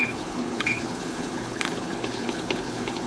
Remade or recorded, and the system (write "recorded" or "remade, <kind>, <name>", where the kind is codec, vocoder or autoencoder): remade, codec, HILCodec